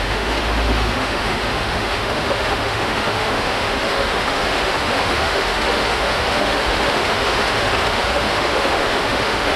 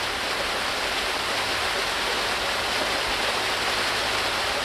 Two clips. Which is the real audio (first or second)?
second